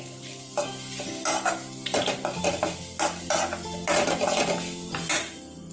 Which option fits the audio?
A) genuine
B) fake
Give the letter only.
A